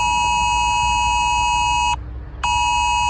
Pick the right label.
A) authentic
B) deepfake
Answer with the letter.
A